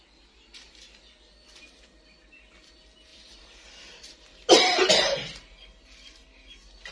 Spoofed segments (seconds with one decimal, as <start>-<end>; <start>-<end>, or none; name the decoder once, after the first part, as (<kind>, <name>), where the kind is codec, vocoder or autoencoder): 3.1-4.9 (vocoder, BigVGAN v2)